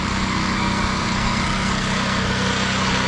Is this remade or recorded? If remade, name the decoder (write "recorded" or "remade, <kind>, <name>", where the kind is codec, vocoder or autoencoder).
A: remade, codec, SNAC